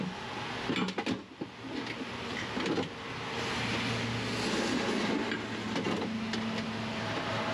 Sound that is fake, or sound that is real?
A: real